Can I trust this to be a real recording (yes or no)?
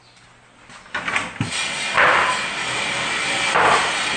yes